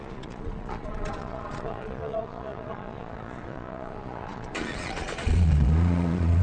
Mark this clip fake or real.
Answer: fake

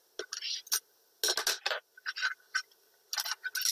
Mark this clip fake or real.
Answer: real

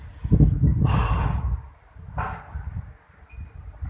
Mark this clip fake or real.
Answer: real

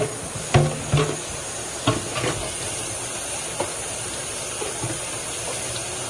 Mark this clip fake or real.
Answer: real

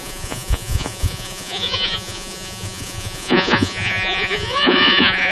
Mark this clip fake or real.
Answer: fake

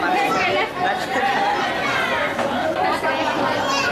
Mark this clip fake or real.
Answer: real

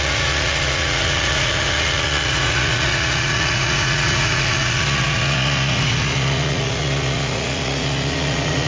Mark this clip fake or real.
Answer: fake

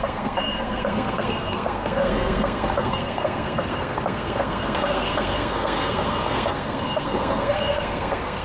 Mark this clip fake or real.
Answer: fake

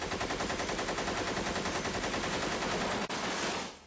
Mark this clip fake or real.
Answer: real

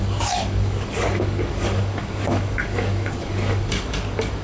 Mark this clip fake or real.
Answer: fake